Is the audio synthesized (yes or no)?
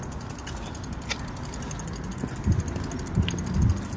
no